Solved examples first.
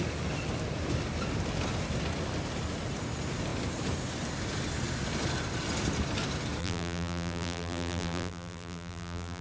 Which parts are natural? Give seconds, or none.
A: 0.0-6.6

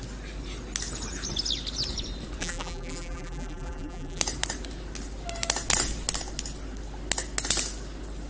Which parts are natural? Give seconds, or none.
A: 0.0-2.4; 4.2-8.3

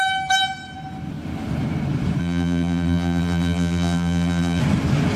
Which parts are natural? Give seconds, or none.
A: 0.0-2.2; 4.6-5.2

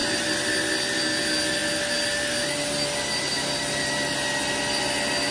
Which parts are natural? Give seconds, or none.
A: 0.0-5.3

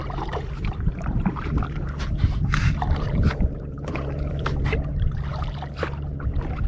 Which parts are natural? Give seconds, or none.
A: none